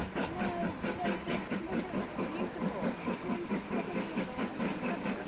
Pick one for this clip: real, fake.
real